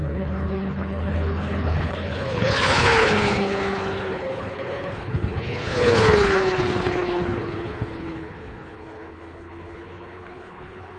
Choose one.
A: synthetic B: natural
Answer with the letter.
A